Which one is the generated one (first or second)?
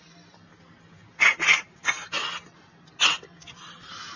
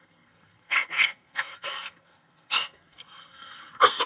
second